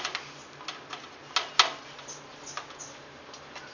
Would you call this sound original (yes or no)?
yes